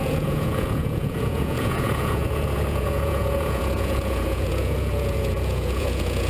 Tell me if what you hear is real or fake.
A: fake